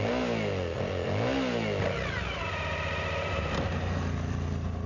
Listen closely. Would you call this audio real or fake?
real